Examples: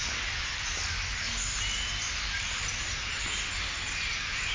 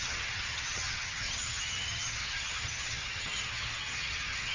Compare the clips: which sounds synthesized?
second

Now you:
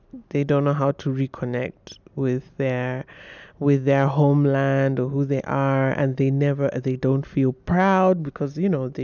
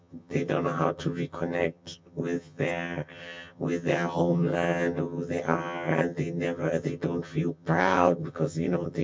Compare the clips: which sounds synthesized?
second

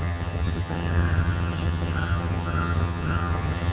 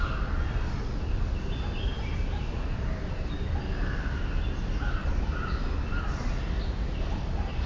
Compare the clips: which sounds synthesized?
first